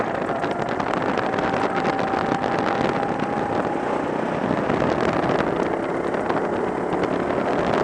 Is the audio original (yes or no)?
yes